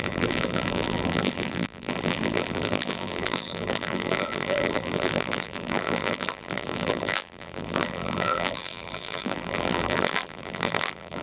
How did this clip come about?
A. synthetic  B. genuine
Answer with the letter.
A